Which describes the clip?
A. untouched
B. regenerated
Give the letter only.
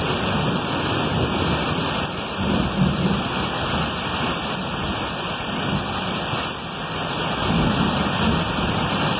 A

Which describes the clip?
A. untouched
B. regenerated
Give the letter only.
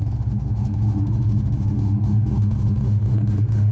B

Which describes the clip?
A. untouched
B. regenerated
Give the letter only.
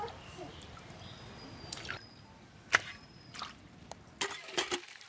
A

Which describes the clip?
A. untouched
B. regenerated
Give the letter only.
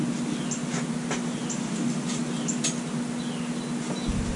A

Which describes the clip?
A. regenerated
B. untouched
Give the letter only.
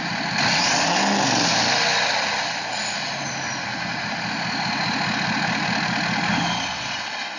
B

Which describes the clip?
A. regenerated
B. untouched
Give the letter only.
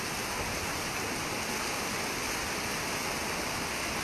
B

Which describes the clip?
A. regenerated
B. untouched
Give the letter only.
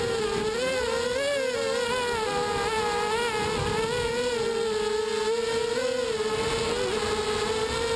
B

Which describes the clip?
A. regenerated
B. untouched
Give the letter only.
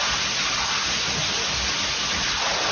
B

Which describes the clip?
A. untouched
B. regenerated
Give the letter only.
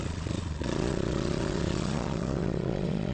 B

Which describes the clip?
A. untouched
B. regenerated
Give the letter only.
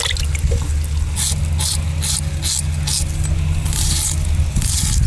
A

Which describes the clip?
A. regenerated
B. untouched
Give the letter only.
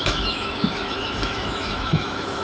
A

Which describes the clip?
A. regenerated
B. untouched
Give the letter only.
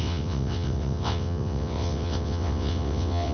A